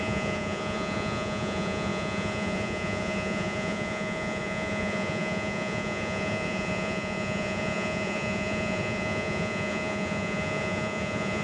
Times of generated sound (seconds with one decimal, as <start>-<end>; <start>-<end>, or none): 0.0-11.4